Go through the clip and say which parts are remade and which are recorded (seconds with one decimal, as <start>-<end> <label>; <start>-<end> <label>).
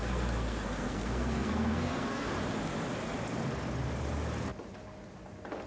0.0-2.3 remade; 2.3-5.7 recorded